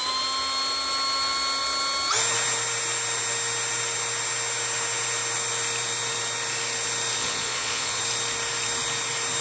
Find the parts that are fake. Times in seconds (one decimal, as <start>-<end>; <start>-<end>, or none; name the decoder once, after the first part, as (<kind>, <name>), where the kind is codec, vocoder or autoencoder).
7.2-8.0 (vocoder, Vocos)